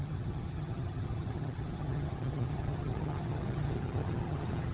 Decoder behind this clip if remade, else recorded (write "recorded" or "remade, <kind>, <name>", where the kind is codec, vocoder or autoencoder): remade, vocoder, HiFi-GAN